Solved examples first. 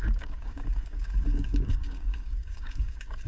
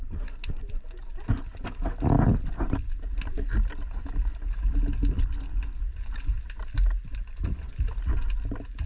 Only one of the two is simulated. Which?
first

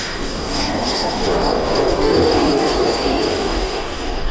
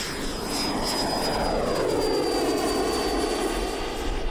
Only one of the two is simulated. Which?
first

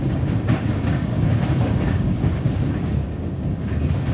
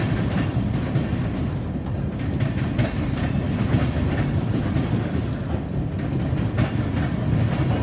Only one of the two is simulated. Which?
first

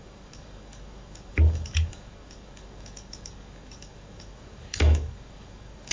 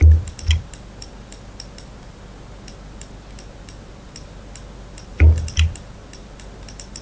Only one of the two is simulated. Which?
first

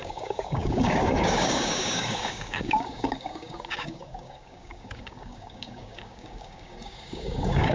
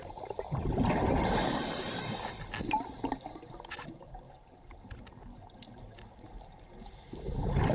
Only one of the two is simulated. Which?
first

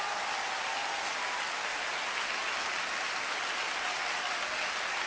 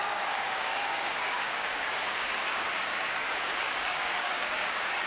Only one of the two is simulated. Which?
second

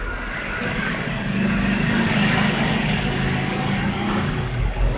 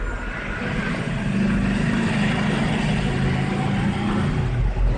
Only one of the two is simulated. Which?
first